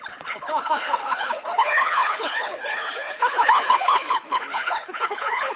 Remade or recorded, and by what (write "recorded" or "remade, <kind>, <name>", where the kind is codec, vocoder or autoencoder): remade, codec, HILCodec